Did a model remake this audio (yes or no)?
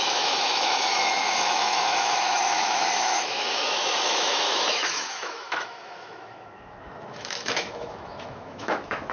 yes